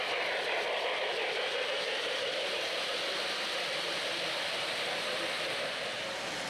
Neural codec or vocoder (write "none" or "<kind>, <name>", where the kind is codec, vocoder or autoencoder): vocoder, BigVGAN v2